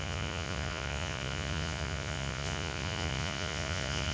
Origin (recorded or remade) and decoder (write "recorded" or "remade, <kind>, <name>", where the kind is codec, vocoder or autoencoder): remade, vocoder, Vocos